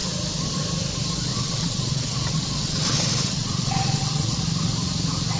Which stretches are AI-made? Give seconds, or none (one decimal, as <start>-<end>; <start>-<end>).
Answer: 1.3-4.4